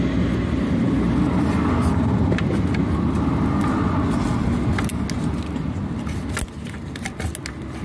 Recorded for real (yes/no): yes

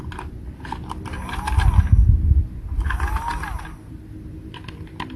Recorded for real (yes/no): yes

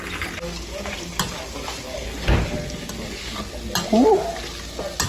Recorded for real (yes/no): yes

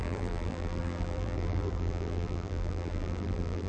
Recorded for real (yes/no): no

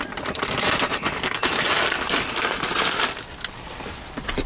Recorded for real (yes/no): yes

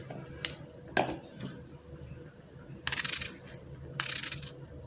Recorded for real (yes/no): yes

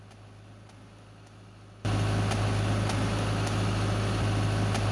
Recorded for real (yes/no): yes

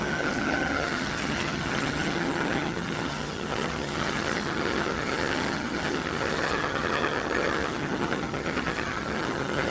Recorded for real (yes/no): no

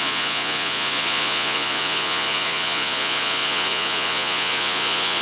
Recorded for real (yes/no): no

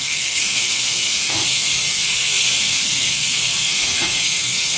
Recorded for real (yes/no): no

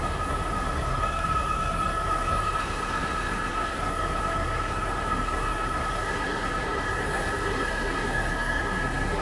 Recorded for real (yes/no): no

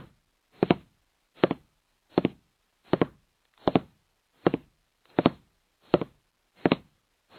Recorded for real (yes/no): yes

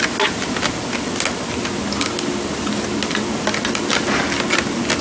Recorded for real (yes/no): yes